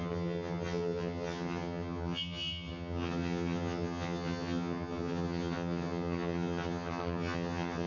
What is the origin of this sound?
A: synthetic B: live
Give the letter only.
A